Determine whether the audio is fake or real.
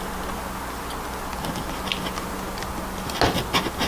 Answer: real